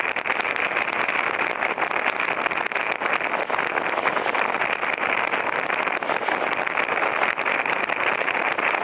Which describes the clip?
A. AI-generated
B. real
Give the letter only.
B